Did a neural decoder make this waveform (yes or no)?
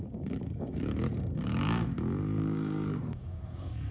yes